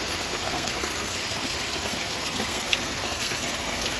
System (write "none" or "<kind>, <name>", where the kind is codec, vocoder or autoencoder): codec, SNAC